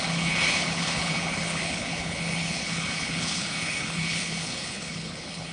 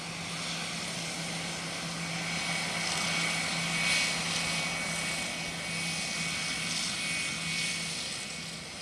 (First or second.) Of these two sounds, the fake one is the first